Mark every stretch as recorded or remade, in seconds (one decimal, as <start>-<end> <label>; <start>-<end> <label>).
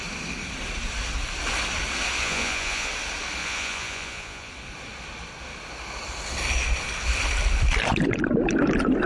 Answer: 0.0-2.2 recorded; 2.2-2.9 remade; 2.9-3.4 recorded; 3.4-4.5 remade; 4.5-9.1 recorded